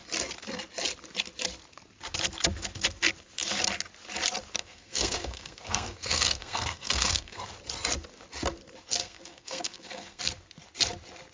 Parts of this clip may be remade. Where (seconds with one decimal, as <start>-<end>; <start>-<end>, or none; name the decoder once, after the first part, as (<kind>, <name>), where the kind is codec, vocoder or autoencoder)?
4.6-7.4 (codec, SNAC); 9.0-10.2